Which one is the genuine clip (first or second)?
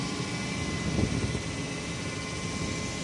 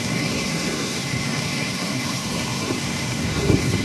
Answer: first